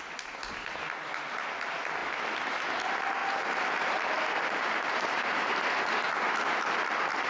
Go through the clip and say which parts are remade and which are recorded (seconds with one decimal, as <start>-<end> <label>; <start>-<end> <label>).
0.0-3.2 recorded; 3.2-5.5 remade; 5.5-7.3 recorded